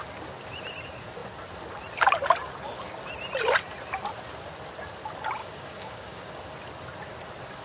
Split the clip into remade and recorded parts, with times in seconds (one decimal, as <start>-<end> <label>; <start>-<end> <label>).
0.0-5.4 recorded; 5.4-6.4 remade; 6.4-7.6 recorded

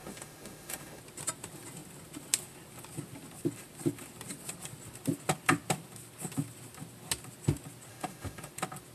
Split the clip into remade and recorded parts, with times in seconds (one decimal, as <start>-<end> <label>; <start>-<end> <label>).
0.0-1.0 remade; 1.0-7.9 recorded; 7.9-8.5 remade; 8.5-8.9 recorded